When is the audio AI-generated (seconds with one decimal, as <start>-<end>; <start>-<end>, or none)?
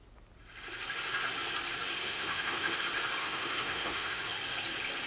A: 2.0-2.8; 3.2-4.2